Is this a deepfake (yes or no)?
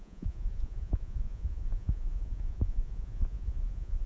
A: yes